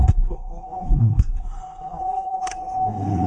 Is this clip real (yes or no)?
no